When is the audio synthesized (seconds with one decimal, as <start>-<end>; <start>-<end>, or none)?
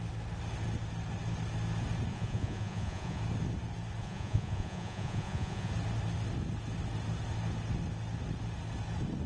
2.1-3.2; 4.0-5.7